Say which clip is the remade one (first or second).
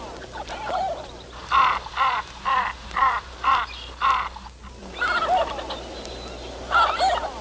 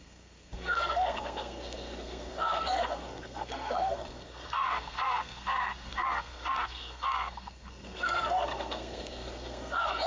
second